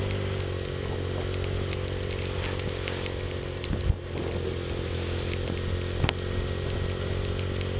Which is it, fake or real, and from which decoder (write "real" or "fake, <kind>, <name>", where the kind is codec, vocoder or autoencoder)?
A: real